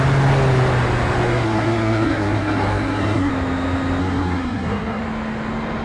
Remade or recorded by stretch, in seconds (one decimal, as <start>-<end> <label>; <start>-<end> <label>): 0.0-1.3 recorded; 1.3-3.3 remade; 3.3-4.0 recorded; 4.0-5.0 remade; 5.0-5.8 recorded